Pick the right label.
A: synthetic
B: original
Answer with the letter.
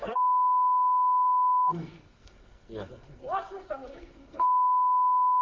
A